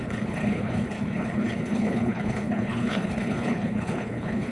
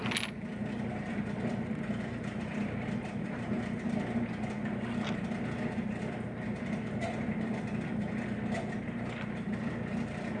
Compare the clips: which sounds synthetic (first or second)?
first